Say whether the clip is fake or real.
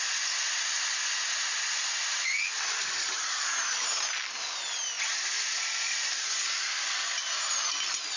real